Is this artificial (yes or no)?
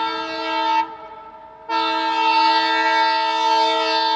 no